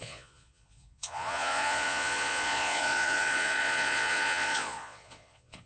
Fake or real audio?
fake